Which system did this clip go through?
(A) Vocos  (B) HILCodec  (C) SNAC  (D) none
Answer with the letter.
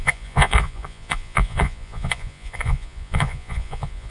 A